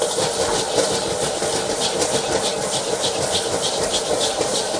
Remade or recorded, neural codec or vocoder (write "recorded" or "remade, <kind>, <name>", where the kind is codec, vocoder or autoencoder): recorded